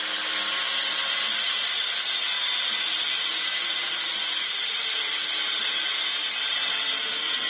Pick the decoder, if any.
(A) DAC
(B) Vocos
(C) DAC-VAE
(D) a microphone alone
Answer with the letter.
D